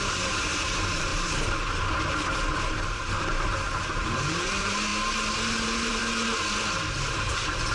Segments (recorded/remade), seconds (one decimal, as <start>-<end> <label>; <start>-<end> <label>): 0.0-4.9 remade; 4.9-5.5 recorded; 5.5-6.0 remade; 6.0-7.1 recorded; 7.1-7.7 remade